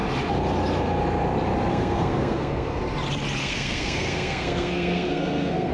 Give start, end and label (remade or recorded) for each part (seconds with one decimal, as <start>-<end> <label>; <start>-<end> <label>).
0.0-1.7 recorded; 1.7-2.8 remade; 2.8-3.4 recorded; 3.4-5.7 remade